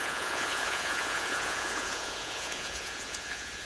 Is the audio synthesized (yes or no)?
yes